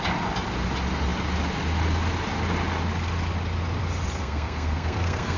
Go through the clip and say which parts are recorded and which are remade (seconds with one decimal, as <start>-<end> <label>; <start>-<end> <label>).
0.0-4.2 recorded; 4.2-5.4 remade